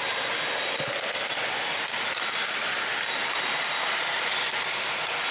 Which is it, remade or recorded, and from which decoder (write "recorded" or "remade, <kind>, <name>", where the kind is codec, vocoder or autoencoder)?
recorded